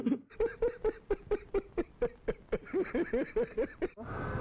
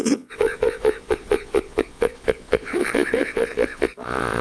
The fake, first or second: second